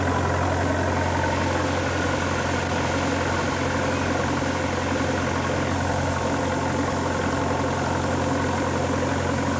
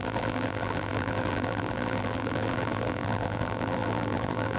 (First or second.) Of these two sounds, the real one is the first